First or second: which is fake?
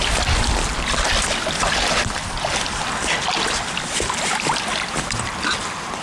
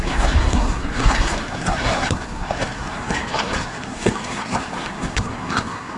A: second